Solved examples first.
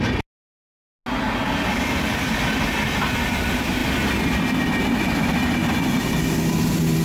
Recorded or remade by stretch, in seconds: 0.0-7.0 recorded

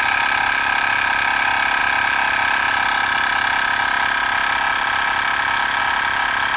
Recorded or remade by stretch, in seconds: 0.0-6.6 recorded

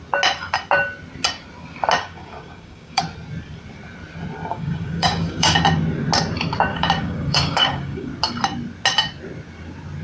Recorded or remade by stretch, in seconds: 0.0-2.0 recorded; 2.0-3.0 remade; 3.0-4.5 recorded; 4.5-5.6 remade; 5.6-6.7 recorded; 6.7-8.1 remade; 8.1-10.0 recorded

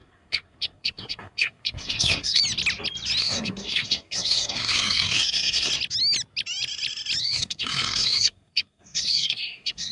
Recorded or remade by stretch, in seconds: 0.0-2.4 remade; 2.4-3.2 recorded; 3.2-5.7 remade; 5.7-7.2 recorded; 7.2-9.9 remade

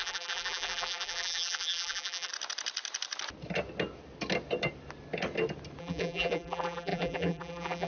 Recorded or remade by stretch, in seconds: 0.0-2.3 remade; 2.3-5.8 recorded; 5.8-7.9 remade

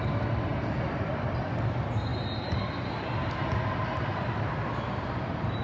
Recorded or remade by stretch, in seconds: 0.0-5.6 recorded

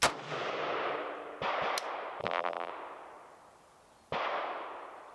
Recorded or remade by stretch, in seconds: 0.0-2.2 recorded; 2.2-2.7 remade; 2.7-5.1 recorded